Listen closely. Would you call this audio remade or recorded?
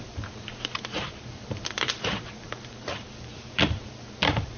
remade